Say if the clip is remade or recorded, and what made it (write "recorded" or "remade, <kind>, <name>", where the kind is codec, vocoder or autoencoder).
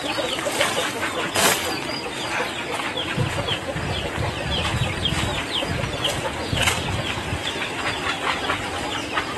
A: recorded